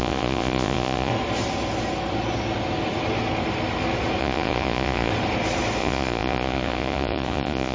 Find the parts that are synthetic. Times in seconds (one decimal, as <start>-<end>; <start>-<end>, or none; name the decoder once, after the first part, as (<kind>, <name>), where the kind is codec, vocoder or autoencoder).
0.0-1.1 (vocoder, Vocos); 4.2-5.1; 5.8-7.7